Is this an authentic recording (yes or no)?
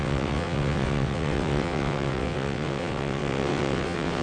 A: no